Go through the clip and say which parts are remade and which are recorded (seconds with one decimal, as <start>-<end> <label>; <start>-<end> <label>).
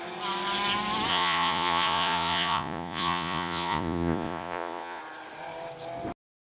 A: 0.0-1.1 recorded; 1.1-5.0 remade; 5.0-6.5 recorded